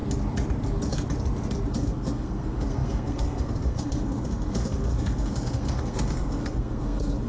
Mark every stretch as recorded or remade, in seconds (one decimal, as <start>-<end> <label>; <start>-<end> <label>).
0.0-1.7 recorded; 1.7-7.3 remade